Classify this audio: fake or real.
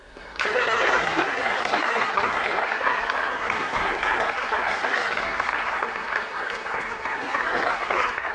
fake